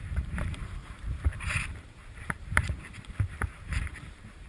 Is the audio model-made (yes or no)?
yes